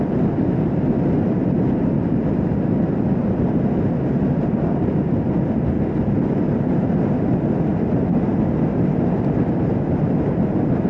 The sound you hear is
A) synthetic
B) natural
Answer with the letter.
B